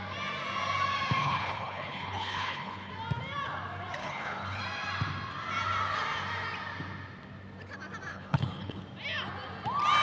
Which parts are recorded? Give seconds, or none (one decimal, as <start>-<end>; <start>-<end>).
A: 0.0-1.2; 2.9-4.0; 4.6-8.1; 8.8-10.0